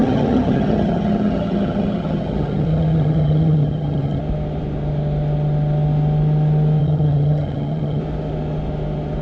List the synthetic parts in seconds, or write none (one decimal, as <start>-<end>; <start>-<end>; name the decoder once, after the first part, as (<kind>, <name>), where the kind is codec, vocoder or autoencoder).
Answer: 0.0-4.2 (vocoder, HiFi-GAN); 6.8-8.0